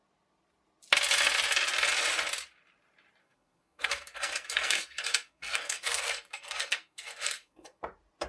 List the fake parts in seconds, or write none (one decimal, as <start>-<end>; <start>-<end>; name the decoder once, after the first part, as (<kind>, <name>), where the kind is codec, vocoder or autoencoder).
3.2-7.8 (codec, SNAC)